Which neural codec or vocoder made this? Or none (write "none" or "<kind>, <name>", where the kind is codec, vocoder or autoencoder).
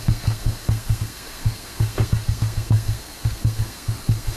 codec, SNAC